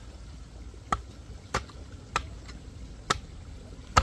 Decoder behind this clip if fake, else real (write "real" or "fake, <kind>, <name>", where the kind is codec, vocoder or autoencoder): real